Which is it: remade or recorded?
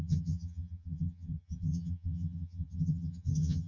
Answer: remade